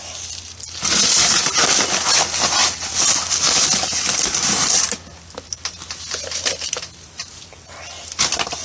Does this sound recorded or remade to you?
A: recorded